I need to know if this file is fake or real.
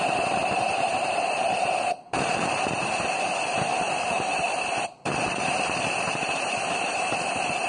fake